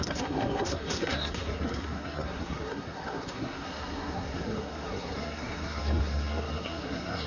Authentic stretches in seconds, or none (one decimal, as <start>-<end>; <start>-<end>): none